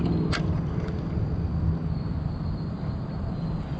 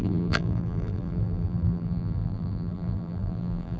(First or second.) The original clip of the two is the first